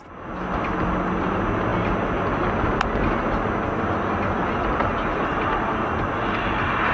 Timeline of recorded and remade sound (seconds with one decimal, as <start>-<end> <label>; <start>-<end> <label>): 0.0-6.9 recorded